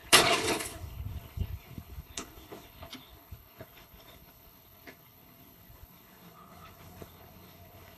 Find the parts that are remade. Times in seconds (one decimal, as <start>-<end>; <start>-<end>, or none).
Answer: 0.0-8.0